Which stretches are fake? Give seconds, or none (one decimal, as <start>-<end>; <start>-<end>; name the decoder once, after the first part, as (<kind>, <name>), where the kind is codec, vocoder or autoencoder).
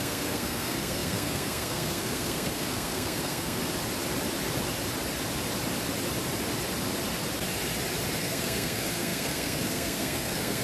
0.0-3.6 (codec, SNAC); 8.2-10.6